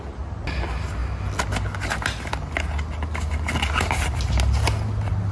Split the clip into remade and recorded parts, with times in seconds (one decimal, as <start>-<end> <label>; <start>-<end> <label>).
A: 0.0-5.3 recorded